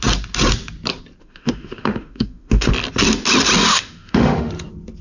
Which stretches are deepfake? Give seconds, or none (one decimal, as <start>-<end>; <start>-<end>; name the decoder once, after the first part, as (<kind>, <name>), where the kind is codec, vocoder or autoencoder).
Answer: 1.2-2.7 (autoencoder, DAC-VAE); 3.7-4.5